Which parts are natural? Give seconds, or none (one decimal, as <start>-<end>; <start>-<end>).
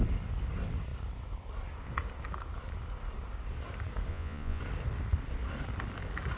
0.0-4.1; 4.6-6.4